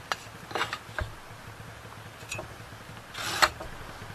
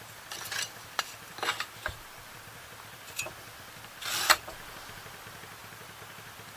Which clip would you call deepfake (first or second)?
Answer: second